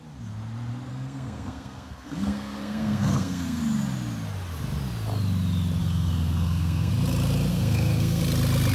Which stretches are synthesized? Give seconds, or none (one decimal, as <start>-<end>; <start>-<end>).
0.9-3.6; 5.8-6.9; 7.5-8.2